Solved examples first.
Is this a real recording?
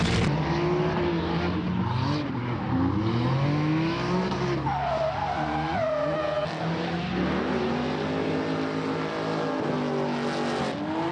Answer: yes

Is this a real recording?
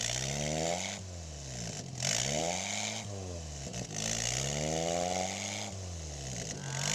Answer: yes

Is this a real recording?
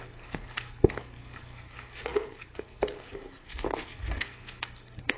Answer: no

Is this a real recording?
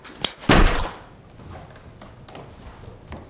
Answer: yes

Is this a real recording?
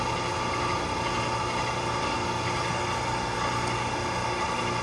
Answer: yes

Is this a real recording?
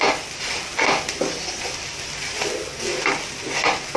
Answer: yes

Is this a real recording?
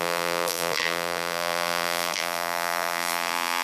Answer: no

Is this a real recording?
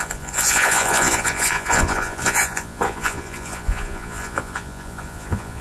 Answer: no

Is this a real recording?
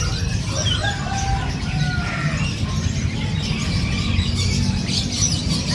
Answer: yes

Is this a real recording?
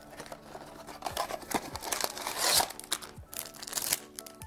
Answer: yes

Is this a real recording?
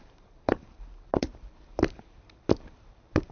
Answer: no